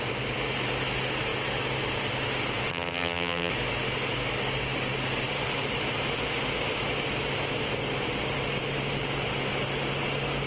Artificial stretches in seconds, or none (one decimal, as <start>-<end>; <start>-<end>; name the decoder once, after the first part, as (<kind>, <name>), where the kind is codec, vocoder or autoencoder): 2.7-3.5 (vocoder, HiFi-GAN)